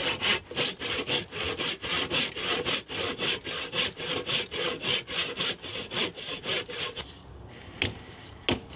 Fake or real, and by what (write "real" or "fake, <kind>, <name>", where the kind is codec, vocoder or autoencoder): real